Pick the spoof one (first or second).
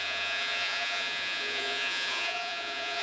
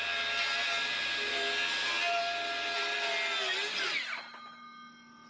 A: first